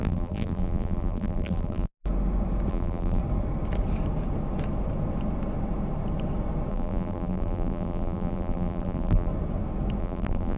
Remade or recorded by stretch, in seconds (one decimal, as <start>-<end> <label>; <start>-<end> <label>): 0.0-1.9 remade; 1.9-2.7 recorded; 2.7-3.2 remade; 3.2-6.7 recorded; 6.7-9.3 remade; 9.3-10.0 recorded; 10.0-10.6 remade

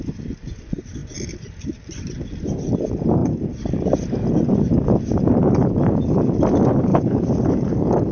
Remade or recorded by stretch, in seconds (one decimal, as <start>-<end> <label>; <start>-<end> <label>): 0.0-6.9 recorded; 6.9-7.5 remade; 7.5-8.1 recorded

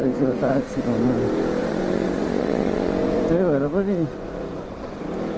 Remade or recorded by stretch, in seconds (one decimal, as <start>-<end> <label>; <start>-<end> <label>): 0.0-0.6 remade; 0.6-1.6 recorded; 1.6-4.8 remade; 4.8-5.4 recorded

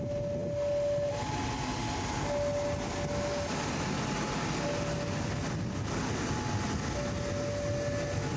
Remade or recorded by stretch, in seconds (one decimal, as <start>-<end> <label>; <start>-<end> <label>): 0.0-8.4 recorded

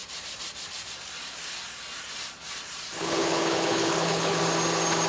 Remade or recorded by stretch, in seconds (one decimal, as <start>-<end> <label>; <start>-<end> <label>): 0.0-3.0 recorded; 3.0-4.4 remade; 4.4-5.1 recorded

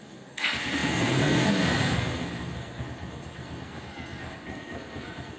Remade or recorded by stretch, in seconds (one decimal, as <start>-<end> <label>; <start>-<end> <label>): 0.0-5.4 remade

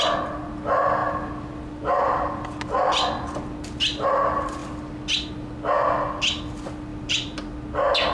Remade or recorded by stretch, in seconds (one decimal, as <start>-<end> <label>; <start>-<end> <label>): 0.0-1.0 recorded; 1.0-3.6 remade; 3.6-6.9 recorded; 6.9-7.4 remade; 7.4-8.1 recorded